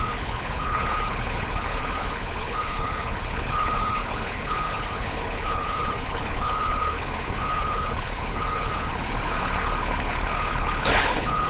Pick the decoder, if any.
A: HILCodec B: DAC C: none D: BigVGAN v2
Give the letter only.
A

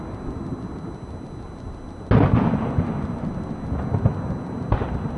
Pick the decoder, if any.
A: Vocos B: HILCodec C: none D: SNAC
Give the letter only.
C